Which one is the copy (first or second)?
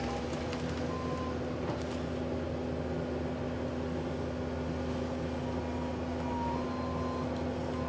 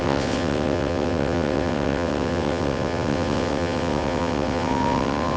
second